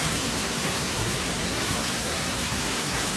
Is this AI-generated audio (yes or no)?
yes